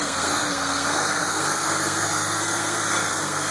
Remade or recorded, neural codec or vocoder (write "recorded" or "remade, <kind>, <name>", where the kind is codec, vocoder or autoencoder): remade, codec, SNAC